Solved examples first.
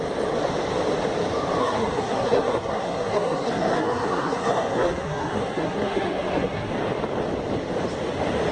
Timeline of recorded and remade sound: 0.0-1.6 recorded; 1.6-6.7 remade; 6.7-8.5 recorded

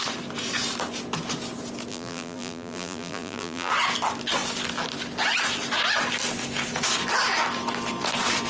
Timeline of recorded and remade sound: 0.0-1.9 recorded; 1.9-3.7 remade; 3.7-8.5 recorded

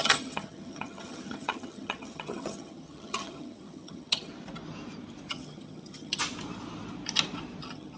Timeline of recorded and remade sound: 0.0-4.3 remade; 4.3-5.3 recorded; 5.3-6.2 remade; 6.2-7.6 recorded; 7.6-8.0 remade

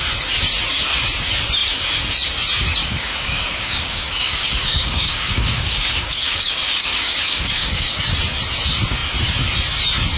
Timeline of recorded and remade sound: 0.0-2.8 recorded; 2.8-8.0 remade; 8.0-10.2 recorded

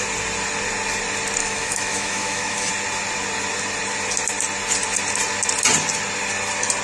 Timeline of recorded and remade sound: 0.0-1.4 recorded; 1.4-2.7 remade; 2.7-6.8 recorded

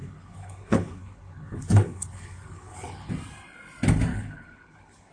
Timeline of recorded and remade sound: 0.0-3.1 remade; 3.1-4.1 recorded; 4.1-5.1 remade